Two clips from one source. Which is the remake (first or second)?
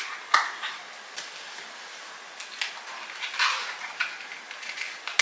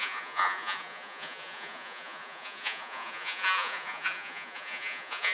second